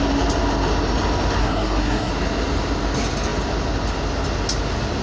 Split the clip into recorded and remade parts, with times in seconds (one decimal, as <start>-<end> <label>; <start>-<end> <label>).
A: 0.0-1.4 recorded; 1.4-2.1 remade; 2.1-5.0 recorded